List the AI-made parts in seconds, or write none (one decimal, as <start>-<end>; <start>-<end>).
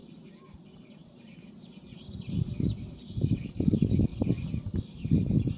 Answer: 0.0-3.4